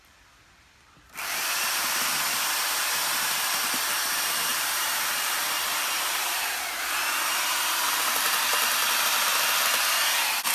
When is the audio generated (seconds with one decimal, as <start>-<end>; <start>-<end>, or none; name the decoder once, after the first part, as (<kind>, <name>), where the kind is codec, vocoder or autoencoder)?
4.5-6.5 (vocoder, BigVGAN v2)